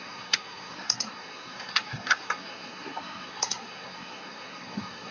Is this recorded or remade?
remade